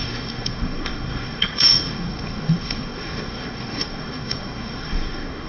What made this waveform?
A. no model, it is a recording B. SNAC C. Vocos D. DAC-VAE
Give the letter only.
B